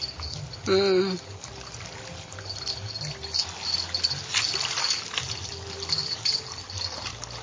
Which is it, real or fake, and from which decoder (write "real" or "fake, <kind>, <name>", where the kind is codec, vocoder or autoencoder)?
real